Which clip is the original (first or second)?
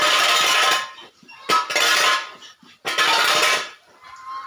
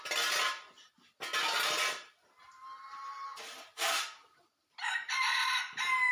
second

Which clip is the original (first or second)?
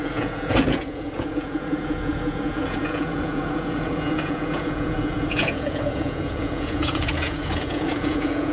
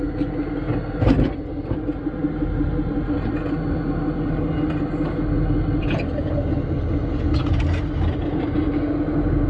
second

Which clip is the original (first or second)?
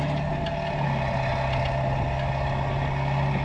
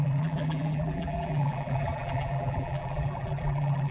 first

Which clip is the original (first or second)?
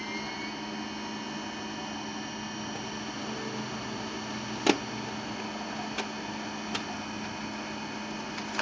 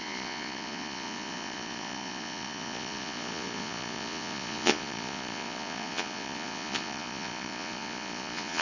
first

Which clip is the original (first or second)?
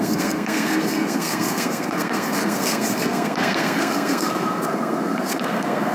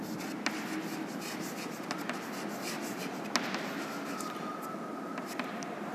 second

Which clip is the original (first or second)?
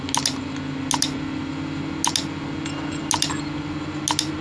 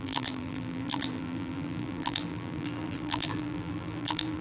first